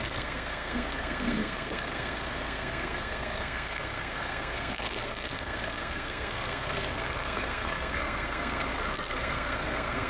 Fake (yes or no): yes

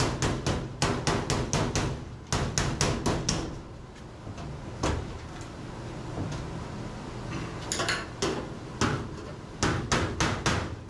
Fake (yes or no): no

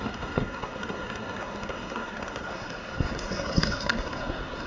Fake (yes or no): yes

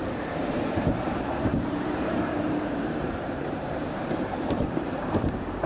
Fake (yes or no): yes